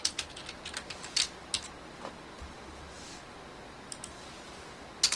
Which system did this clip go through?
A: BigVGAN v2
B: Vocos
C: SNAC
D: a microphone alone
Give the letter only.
D